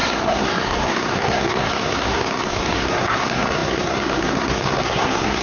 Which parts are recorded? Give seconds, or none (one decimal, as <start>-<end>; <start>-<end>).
none